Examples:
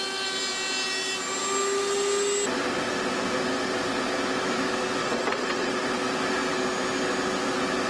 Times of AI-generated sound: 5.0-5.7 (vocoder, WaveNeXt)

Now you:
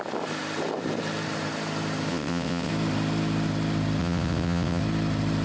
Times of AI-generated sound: 2.1-2.7 (vocoder, WaveNeXt); 4.0-4.8